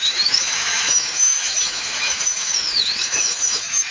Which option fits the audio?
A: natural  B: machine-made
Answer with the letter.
B